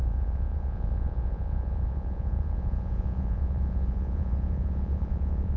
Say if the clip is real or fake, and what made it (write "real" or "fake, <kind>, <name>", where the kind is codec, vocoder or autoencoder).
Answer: fake, vocoder, Vocos